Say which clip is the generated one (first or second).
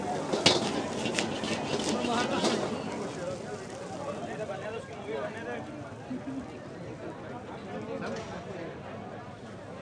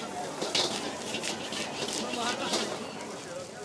second